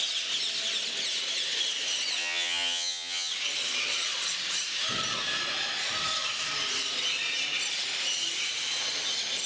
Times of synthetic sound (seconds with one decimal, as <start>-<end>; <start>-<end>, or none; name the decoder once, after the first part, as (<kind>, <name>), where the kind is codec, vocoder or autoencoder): 2.2-3.3 (vocoder, HiFi-GAN)